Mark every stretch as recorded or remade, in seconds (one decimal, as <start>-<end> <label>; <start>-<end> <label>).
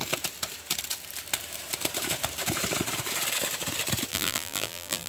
0.0-4.1 recorded; 4.1-5.1 remade